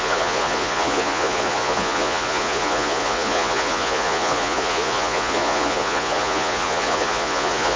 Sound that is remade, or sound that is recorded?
remade